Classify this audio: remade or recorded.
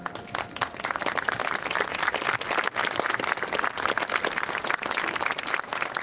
recorded